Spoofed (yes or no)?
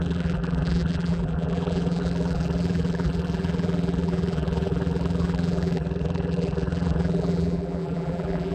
yes